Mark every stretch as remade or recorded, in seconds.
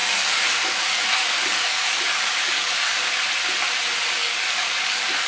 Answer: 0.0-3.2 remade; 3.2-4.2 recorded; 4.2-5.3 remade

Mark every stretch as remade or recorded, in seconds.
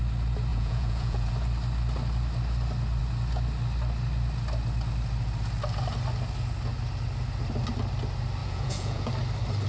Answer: 0.0-0.5 recorded; 0.5-1.3 remade; 1.3-8.4 recorded; 8.4-9.1 remade; 9.1-9.7 recorded